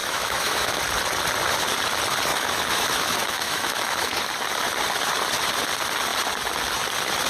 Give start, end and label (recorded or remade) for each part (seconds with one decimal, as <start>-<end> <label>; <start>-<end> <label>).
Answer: 0.0-0.8 remade; 0.8-2.3 recorded; 2.3-4.2 remade; 4.2-7.3 recorded

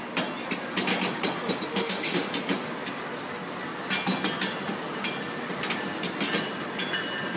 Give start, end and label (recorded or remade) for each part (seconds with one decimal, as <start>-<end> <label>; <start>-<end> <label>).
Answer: 0.0-1.7 recorded; 1.7-2.3 remade; 2.3-7.4 recorded